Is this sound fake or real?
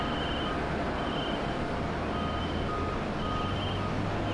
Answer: real